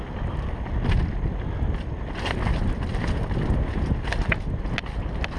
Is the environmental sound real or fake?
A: real